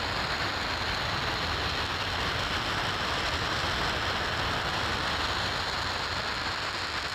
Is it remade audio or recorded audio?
recorded